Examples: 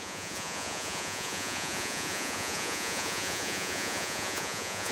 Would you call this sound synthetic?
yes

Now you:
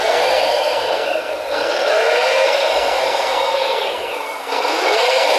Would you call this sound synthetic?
yes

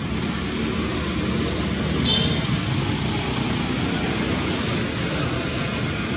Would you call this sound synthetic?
no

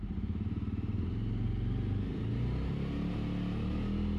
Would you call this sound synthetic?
no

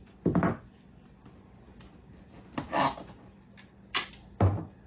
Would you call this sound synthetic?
no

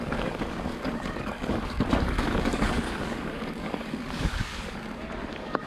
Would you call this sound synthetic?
yes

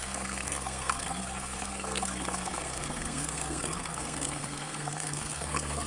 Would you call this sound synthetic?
yes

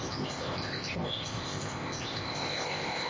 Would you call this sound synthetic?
yes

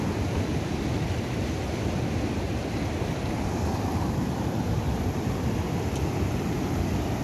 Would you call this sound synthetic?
no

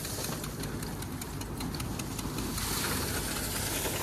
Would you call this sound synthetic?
no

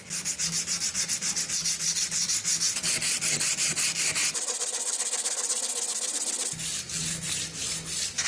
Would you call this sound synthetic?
no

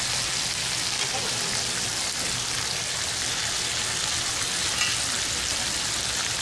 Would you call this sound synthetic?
no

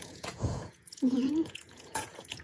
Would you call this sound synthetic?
yes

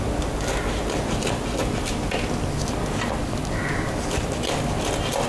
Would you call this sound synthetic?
no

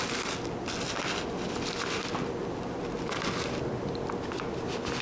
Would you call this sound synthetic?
no